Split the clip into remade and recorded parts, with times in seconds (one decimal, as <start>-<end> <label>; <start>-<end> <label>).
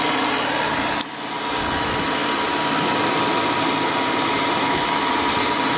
0.0-5.8 recorded